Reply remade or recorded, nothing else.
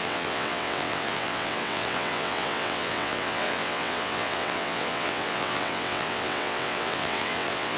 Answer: remade